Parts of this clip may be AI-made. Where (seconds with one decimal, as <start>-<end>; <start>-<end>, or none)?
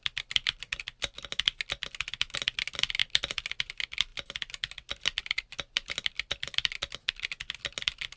none